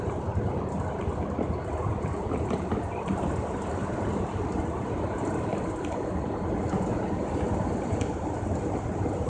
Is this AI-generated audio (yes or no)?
no